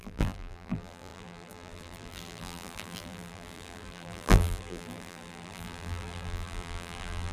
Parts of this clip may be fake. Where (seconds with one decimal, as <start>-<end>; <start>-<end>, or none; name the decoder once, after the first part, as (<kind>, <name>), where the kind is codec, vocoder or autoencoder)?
0.0-7.3 (vocoder, BigVGAN v2)